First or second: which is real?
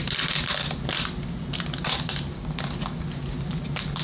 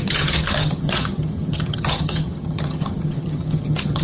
first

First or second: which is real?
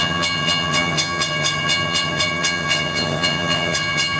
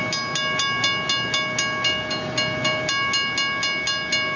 second